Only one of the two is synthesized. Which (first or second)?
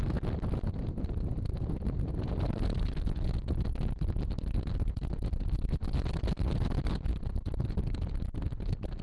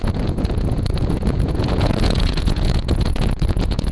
second